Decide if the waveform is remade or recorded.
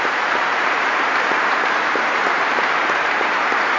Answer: remade